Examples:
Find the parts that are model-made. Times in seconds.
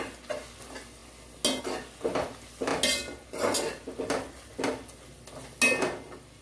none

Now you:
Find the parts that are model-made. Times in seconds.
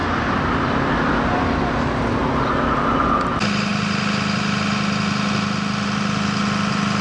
none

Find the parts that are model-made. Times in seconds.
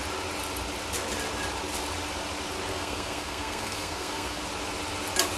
2.7-4.4 (codec, SNAC)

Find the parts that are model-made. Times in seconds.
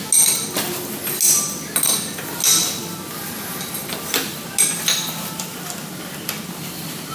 none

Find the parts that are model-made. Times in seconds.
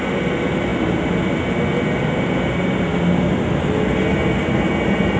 none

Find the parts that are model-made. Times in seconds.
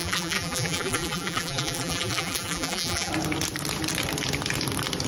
0.0-3.1 (vocoder, BigVGAN v2)